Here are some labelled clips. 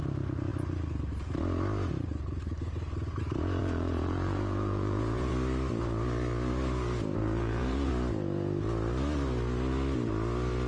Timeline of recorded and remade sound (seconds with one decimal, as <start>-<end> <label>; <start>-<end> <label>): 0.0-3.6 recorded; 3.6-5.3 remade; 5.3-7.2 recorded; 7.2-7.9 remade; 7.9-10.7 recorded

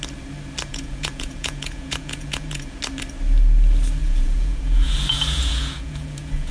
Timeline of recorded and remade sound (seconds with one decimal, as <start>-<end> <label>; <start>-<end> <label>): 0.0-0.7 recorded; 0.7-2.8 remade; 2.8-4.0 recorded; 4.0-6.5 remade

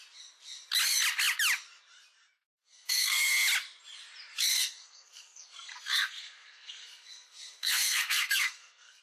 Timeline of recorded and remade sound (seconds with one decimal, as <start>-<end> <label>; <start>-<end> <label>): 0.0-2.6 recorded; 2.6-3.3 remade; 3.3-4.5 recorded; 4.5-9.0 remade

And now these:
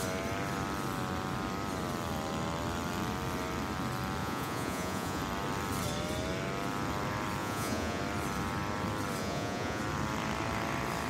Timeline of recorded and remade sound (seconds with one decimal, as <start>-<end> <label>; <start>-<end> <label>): 0.0-4.2 recorded; 4.2-5.2 remade; 5.2-7.4 recorded; 7.4-8.0 remade; 8.0-9.2 recorded; 9.2-9.8 remade; 9.8-11.1 recorded

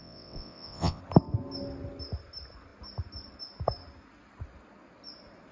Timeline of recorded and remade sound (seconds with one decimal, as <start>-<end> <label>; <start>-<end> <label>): 0.0-1.0 remade; 1.0-5.5 recorded

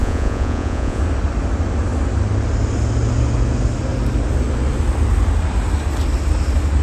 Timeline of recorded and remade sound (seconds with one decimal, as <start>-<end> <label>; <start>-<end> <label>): 0.0-1.0 remade; 1.0-6.8 recorded